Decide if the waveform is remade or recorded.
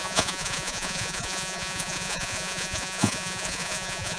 remade